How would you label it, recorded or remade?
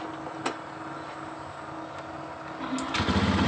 recorded